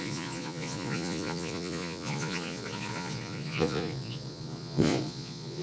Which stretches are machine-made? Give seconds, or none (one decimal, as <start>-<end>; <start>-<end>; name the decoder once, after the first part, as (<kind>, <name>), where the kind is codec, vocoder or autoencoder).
0.0-5.6 (vocoder, Vocos)